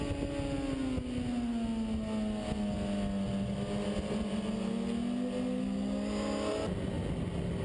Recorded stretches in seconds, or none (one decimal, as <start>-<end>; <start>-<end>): 0.0-7.6